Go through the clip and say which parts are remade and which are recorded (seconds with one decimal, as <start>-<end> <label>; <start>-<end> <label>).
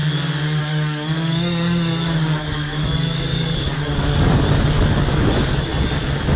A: 0.0-0.6 recorded; 0.6-5.7 remade; 5.7-6.4 recorded